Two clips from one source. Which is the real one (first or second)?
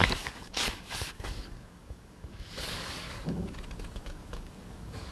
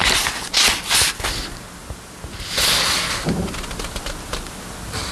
second